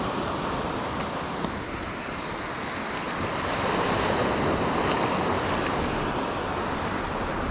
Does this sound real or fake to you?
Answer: real